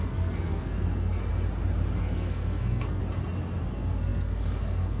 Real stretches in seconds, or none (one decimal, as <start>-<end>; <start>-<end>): 1.3-2.0; 3.0-3.6